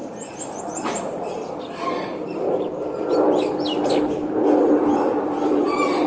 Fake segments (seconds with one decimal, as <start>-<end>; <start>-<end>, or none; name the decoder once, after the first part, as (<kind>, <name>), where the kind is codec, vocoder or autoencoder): none